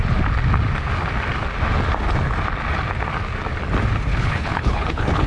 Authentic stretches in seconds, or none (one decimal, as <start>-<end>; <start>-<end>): 0.0-4.1